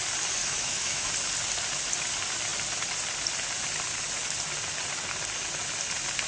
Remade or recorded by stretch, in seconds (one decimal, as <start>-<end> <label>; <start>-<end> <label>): 0.0-0.4 recorded; 0.4-1.1 remade; 1.1-6.3 recorded